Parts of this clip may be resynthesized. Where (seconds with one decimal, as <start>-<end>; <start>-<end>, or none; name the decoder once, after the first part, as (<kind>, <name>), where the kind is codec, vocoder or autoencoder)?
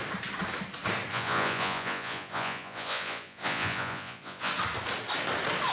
1.1-4.5 (vocoder, Vocos)